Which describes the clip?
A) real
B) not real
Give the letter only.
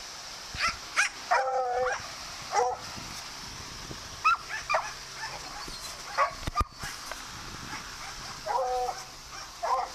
A